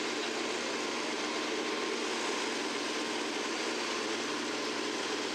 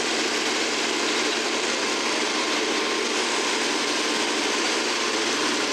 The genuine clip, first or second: first